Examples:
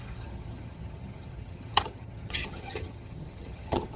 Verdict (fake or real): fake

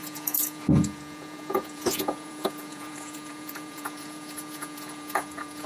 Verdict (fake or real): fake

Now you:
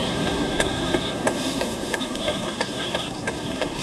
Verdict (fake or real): fake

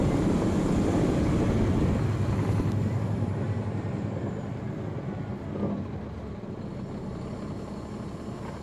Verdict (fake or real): real